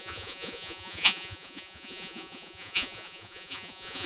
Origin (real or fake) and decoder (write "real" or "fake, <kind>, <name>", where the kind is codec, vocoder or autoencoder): fake, vocoder, Vocos